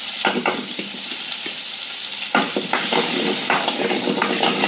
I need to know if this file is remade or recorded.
recorded